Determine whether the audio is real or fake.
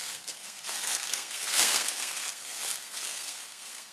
fake